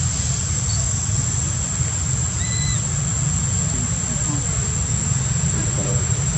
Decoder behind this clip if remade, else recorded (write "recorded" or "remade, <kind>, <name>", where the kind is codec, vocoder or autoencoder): recorded